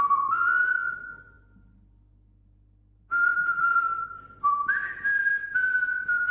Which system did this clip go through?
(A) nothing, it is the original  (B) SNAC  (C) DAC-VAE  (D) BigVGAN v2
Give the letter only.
A